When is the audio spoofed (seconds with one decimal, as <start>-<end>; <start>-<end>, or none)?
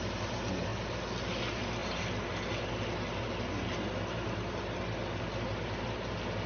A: none